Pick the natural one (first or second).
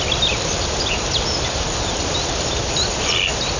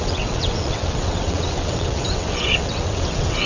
first